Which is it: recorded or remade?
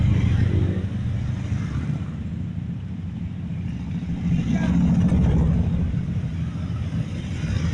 recorded